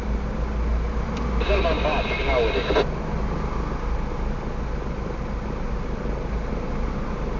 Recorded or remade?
recorded